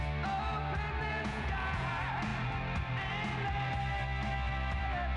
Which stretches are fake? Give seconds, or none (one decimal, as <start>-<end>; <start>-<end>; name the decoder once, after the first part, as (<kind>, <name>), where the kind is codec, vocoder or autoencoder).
1.1-1.9 (vocoder, Vocos)